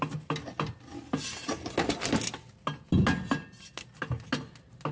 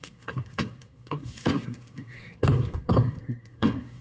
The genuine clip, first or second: first